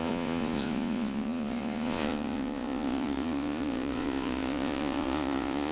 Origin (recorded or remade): remade